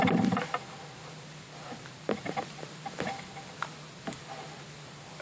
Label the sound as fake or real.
real